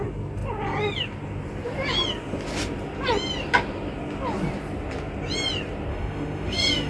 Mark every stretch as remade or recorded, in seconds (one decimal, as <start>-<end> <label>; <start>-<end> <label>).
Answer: 0.0-5.9 recorded; 5.9-6.9 remade